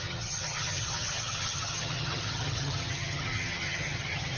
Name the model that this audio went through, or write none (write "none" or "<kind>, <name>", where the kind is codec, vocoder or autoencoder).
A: vocoder, HiFi-GAN